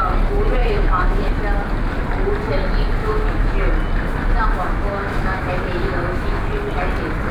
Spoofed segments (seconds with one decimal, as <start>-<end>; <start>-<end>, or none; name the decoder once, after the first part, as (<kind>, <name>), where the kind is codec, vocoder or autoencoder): 0.6-1.3 (autoencoder, DAC-VAE); 3.0-3.5; 4.6-6.4